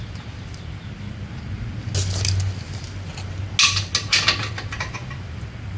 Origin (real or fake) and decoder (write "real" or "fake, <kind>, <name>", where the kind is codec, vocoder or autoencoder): real